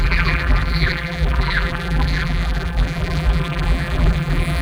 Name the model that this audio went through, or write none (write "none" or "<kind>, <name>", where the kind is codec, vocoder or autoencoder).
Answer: vocoder, BigVGAN v2